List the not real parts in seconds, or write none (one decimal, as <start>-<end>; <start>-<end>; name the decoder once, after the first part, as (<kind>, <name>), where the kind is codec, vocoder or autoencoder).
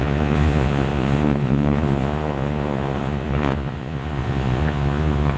0.0-5.4 (vocoder, Vocos)